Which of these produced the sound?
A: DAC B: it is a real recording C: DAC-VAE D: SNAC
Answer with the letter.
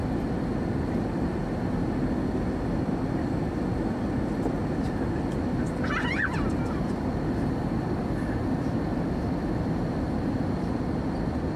B